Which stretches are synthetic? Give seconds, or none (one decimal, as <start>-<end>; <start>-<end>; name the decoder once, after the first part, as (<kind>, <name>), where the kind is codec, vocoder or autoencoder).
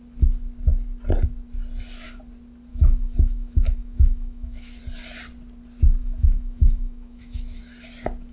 2.7-4.8 (autoencoder, DAC-VAE); 6.0-7.6